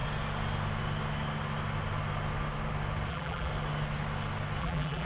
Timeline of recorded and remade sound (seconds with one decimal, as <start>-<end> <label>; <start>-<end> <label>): 0.0-3.1 recorded; 3.1-3.5 remade; 3.5-4.6 recorded; 4.6-5.1 remade